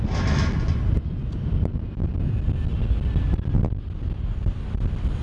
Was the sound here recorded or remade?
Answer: recorded